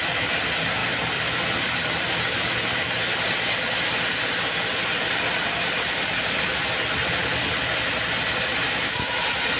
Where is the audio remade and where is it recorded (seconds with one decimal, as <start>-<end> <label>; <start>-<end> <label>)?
0.0-9.6 recorded